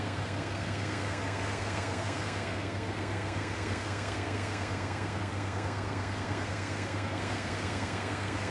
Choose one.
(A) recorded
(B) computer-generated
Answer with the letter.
B